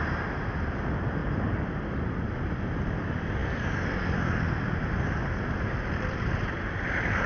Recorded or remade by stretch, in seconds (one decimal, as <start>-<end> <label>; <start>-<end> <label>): 0.0-1.2 recorded; 1.2-2.6 remade; 2.6-7.3 recorded